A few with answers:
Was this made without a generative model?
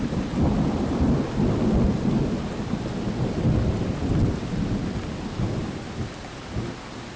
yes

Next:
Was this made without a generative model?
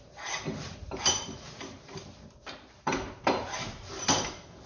no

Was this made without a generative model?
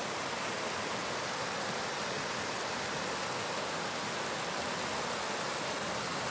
yes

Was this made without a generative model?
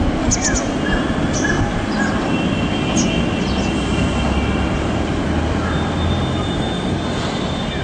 yes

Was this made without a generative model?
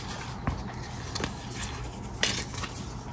yes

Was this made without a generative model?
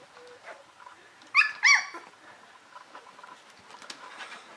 yes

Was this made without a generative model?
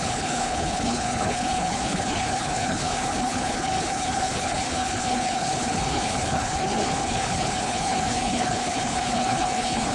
no